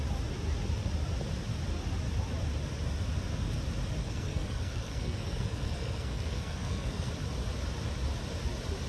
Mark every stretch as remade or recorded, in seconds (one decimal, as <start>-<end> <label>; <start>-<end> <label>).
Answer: 0.0-4.0 recorded; 4.0-7.1 remade; 7.1-8.9 recorded